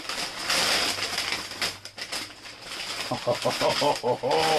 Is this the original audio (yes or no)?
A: yes